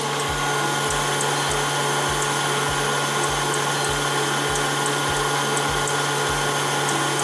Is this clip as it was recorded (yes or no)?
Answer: yes